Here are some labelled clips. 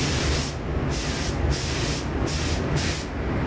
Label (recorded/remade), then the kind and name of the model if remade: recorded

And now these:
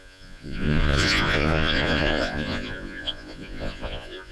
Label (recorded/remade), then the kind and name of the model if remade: remade, vocoder, Vocos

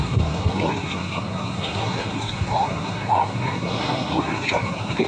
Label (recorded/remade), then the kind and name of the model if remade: remade, codec, SNAC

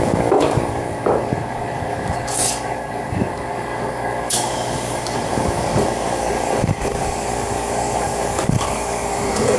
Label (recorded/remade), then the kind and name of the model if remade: remade, codec, DAC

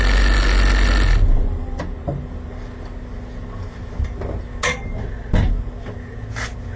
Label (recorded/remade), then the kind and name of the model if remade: recorded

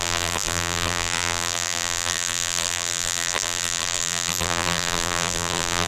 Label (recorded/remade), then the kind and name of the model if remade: remade, vocoder, BigVGAN v2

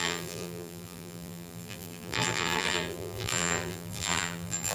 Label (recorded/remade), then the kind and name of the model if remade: remade, vocoder, BigVGAN v2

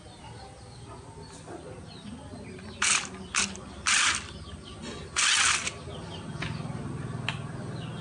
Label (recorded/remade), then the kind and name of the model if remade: recorded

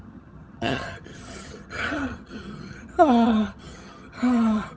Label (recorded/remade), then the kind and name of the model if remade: remade, vocoder, HiFi-GAN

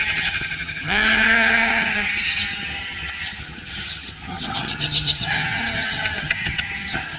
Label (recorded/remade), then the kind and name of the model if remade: remade, vocoder, HiFi-GAN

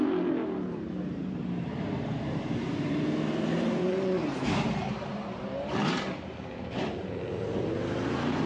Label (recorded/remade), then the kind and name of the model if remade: remade, vocoder, BigVGAN v2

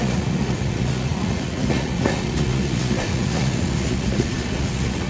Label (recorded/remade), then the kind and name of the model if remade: remade, vocoder, Vocos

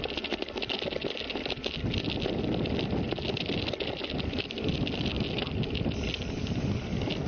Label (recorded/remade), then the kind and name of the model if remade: recorded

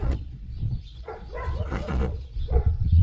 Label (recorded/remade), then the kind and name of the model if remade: remade, vocoder, Vocos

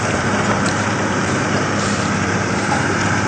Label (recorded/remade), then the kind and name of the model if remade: remade, vocoder, BigVGAN v2